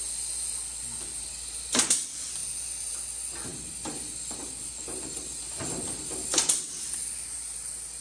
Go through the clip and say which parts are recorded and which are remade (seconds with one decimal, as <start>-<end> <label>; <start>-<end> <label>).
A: 0.0-8.0 recorded